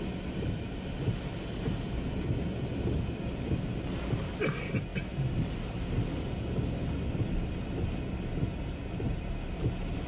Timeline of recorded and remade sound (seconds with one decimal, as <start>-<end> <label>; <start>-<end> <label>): 0.0-10.1 recorded